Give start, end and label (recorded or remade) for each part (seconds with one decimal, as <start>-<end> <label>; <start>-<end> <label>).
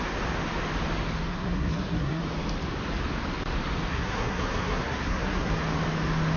0.0-1.3 recorded; 1.3-2.2 remade; 2.2-3.9 recorded; 3.9-5.5 remade; 5.5-6.4 recorded